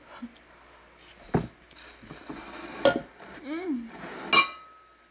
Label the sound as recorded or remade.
recorded